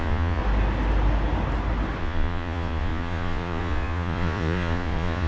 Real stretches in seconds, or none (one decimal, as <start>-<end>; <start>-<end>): 0.4-2.0